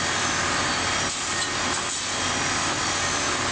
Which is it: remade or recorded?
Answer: recorded